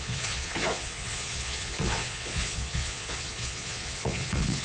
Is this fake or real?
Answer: fake